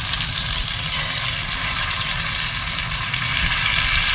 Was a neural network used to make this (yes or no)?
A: no